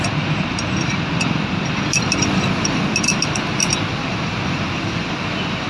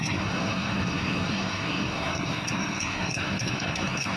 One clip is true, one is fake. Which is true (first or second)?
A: first